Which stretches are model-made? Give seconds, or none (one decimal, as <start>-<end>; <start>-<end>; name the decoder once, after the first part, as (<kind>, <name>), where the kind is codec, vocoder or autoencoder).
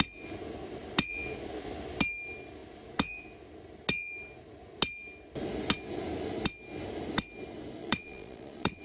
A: 7.8-8.8 (vocoder, Vocos)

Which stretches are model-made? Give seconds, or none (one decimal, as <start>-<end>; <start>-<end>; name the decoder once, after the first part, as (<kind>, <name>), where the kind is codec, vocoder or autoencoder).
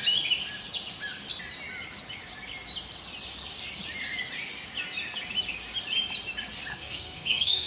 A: 6.7-7.7 (codec, SNAC)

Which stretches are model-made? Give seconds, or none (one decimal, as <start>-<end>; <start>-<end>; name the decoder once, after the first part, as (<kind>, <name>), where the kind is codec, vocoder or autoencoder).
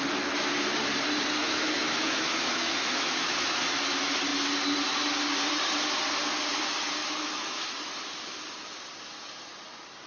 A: 1.4-3.6 (autoencoder, DAC-VAE); 7.0-7.7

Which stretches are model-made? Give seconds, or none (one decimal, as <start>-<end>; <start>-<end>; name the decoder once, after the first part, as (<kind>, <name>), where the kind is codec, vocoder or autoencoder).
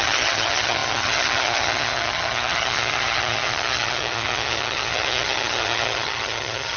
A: 0.0-6.8 (vocoder, HiFi-GAN)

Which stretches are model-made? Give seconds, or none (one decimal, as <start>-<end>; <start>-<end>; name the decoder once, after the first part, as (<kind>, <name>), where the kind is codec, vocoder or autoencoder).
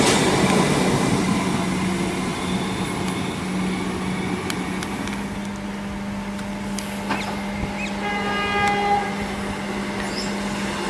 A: none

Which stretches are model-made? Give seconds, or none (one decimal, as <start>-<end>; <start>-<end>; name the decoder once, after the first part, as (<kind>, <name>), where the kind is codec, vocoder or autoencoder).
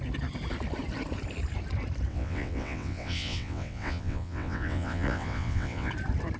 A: 2.1-5.9 (vocoder, WaveNeXt)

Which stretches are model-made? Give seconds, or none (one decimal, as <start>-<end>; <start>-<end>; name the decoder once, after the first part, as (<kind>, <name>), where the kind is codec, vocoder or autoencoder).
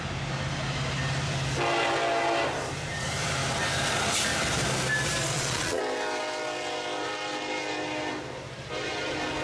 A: 5.3-5.8 (vocoder, Vocos)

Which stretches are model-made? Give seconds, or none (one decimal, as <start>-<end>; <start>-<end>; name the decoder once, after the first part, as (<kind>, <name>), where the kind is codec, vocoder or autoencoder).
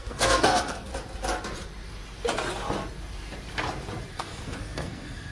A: 0.0-0.9 (codec, SNAC); 4.1-5.3